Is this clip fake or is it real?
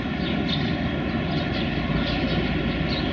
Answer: real